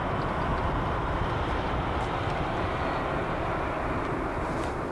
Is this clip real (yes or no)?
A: yes